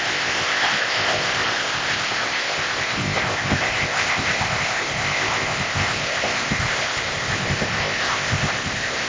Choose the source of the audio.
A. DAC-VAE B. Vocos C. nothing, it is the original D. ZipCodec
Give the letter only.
D